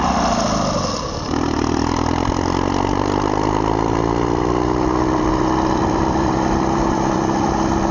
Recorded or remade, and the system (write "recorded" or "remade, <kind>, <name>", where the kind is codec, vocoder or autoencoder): remade, vocoder, BigVGAN v2